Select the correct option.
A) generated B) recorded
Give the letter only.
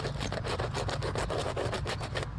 B